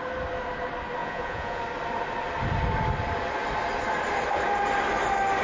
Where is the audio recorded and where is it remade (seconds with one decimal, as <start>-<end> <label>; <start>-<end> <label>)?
0.0-1.0 recorded; 1.0-1.6 remade; 1.6-5.4 recorded